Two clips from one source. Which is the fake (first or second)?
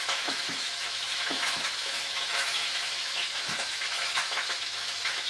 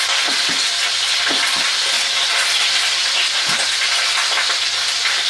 first